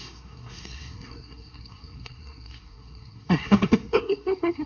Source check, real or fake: fake